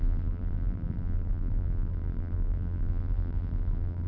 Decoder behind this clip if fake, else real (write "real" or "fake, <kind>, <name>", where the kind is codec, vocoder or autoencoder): fake, vocoder, BigVGAN v2